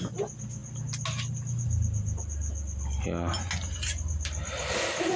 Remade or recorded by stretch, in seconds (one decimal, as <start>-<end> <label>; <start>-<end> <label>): 0.0-5.2 recorded